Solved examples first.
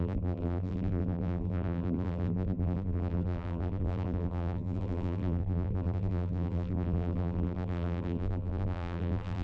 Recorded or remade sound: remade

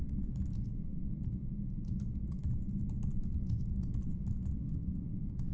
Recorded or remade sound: recorded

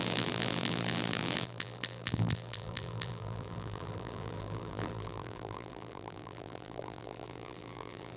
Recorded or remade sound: remade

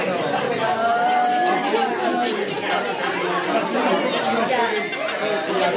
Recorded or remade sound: recorded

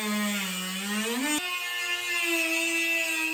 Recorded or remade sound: recorded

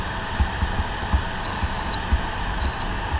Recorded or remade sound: remade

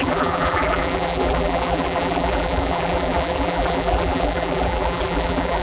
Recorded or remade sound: remade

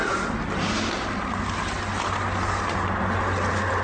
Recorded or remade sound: recorded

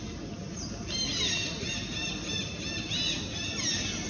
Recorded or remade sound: recorded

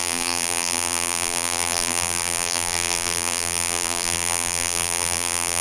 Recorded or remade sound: remade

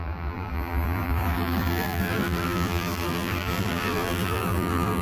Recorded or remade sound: remade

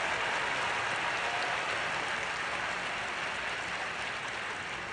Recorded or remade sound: remade